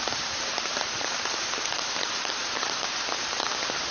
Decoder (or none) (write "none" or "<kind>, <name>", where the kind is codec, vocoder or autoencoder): vocoder, BigVGAN v2